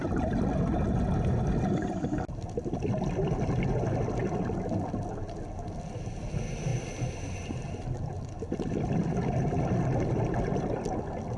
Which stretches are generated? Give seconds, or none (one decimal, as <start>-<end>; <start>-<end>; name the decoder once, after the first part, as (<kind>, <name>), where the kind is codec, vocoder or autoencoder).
none